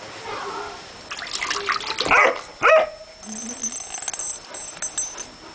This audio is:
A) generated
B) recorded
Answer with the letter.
B